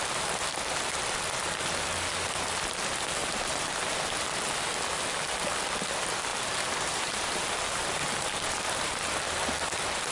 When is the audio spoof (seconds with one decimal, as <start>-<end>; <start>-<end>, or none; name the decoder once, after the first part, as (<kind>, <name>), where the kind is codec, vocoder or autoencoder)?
3.2-4.0 (vocoder, BigVGAN v2); 6.3-8.9